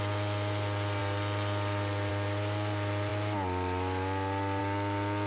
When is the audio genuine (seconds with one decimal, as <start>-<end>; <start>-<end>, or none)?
0.0-5.3

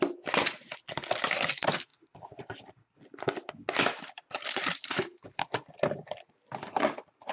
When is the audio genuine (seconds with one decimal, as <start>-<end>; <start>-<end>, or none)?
0.0-7.3

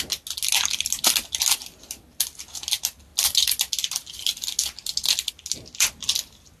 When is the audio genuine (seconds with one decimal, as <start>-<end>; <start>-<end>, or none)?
0.0-6.6